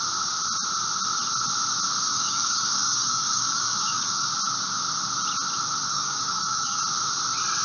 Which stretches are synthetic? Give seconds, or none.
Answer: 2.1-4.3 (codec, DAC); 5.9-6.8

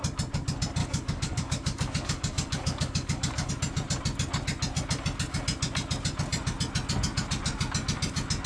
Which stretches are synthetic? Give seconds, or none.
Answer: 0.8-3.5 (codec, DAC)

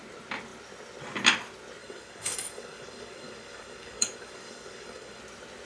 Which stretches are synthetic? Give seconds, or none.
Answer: 1.8-5.2 (codec, DAC)